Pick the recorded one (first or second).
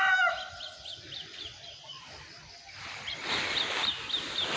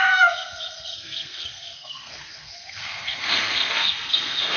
first